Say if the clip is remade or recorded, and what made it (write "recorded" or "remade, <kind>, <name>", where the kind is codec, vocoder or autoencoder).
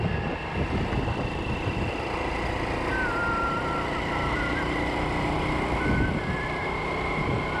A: recorded